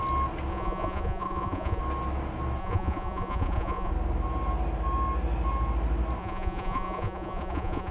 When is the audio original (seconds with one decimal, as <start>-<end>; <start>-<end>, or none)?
0.0-0.5; 1.8-2.6; 3.9-6.2